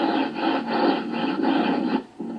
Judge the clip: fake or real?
real